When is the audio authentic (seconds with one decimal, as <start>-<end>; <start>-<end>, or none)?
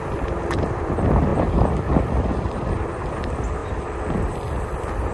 none